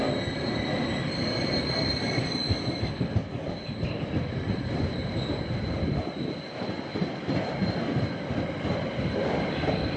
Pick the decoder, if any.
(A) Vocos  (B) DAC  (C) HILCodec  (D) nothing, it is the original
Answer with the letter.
D